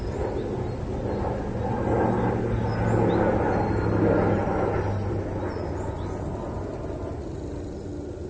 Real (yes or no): yes